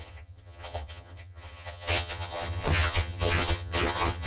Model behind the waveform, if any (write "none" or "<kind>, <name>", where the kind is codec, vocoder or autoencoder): vocoder, HiFi-GAN